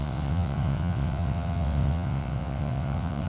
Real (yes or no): no